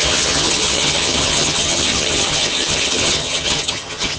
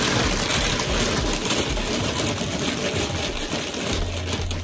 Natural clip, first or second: second